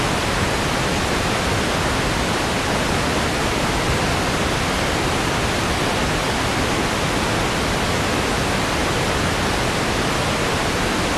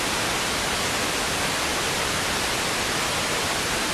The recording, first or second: first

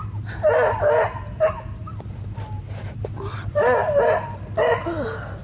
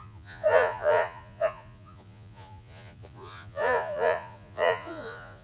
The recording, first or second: first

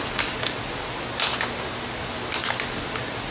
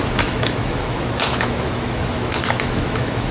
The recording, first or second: first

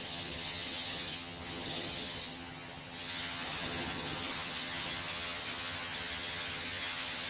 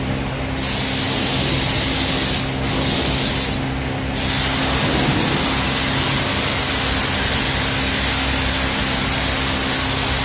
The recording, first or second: second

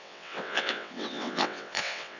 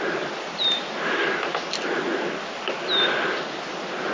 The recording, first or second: second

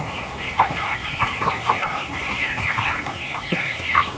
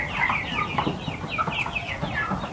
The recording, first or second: second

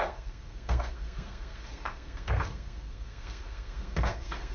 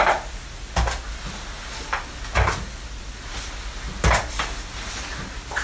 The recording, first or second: second